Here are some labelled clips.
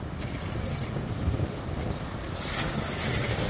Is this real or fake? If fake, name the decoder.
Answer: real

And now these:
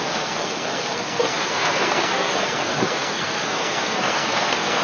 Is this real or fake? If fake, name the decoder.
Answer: fake, codec, SNAC